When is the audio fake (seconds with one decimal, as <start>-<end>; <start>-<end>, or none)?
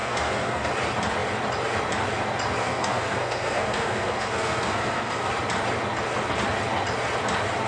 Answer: 0.0-0.7; 2.6-5.3